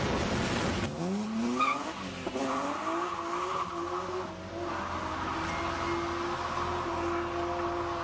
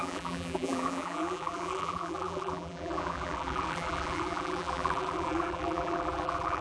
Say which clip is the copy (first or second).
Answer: second